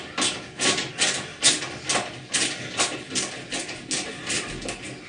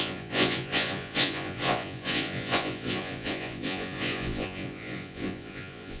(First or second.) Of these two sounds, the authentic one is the first